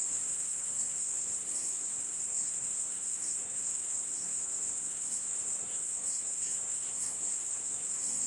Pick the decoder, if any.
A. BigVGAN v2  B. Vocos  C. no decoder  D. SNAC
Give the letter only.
D